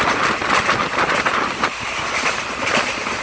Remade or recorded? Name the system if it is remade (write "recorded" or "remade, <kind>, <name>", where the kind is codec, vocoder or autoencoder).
recorded